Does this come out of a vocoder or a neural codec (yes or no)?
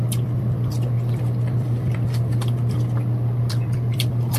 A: no